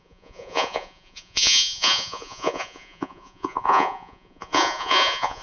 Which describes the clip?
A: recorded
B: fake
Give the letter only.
B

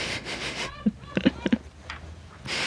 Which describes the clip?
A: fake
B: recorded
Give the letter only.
B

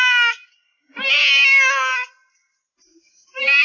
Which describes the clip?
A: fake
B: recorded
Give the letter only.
B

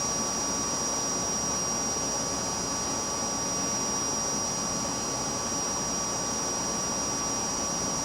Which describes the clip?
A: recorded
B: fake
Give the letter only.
A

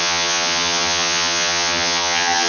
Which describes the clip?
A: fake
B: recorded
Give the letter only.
A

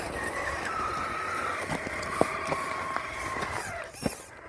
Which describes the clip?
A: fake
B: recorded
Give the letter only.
B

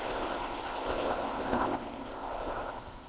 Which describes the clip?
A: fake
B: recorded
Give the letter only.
A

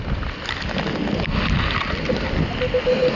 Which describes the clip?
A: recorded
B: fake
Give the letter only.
A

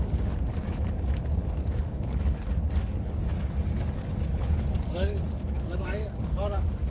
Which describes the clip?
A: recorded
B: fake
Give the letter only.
B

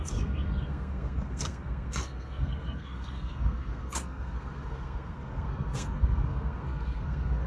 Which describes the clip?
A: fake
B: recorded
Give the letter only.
A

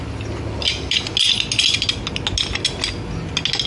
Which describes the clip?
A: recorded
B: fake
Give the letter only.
A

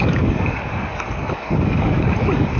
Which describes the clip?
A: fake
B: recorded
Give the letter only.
A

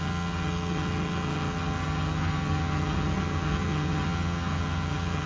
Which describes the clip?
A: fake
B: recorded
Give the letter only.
A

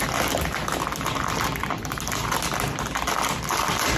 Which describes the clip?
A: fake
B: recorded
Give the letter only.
B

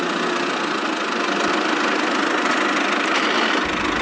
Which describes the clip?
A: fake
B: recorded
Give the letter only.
B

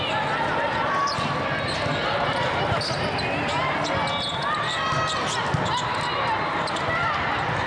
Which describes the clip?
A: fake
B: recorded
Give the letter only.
B